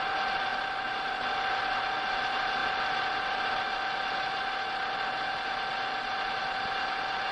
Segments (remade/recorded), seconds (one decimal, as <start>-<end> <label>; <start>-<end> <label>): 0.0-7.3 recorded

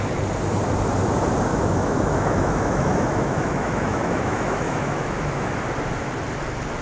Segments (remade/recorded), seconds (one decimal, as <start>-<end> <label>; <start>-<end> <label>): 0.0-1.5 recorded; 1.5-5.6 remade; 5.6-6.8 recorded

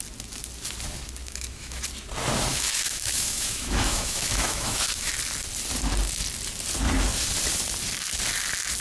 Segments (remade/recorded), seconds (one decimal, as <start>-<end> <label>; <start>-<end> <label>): 0.0-1.2 recorded; 1.2-1.8 remade; 1.8-2.5 recorded; 2.5-5.1 remade; 5.1-8.8 recorded

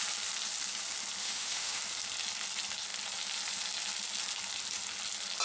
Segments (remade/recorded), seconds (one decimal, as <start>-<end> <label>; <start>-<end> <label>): 0.0-1.2 recorded; 1.2-1.8 remade; 1.8-5.4 recorded